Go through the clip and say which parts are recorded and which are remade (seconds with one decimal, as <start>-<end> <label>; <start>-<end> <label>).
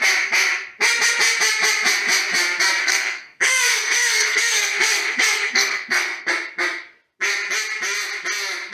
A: 0.0-2.8 recorded; 2.8-6.3 remade; 6.3-8.7 recorded